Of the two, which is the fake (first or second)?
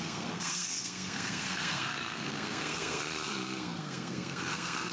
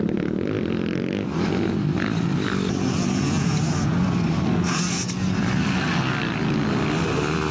first